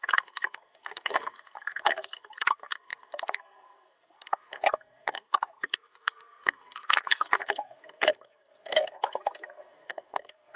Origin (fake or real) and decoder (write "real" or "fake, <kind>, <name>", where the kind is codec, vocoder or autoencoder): fake, codec, SNAC